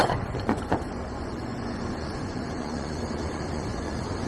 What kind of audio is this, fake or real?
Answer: fake